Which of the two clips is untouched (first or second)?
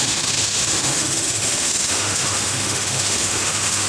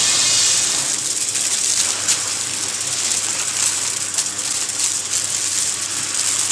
second